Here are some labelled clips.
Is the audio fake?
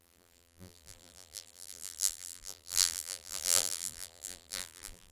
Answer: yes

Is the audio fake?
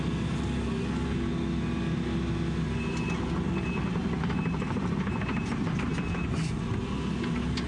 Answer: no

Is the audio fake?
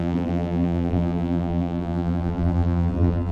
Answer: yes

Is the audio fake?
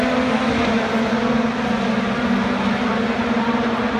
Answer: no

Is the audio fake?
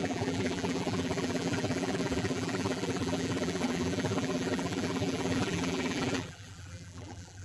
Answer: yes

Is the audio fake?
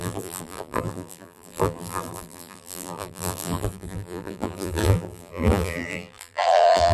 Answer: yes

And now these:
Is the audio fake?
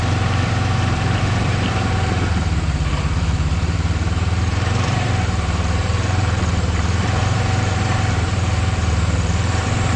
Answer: yes